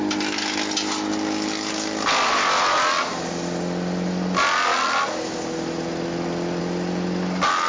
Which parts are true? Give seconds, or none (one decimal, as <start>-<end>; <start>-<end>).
0.0-7.7